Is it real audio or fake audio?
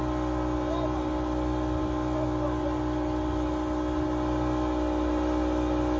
real